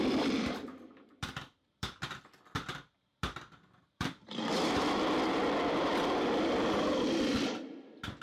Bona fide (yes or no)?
no